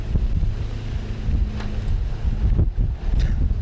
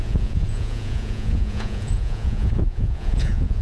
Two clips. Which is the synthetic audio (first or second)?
second